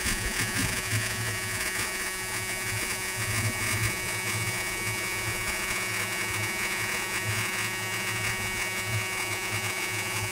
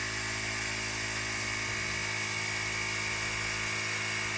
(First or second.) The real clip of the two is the second